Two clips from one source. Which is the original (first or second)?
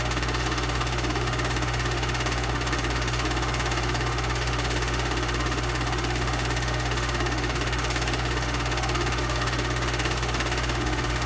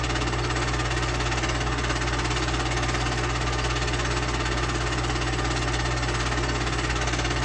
second